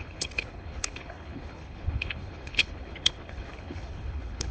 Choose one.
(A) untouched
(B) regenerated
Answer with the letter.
B